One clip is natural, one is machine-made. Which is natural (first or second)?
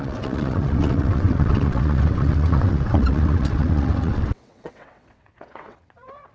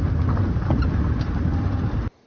second